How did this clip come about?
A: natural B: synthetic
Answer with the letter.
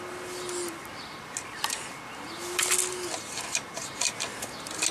A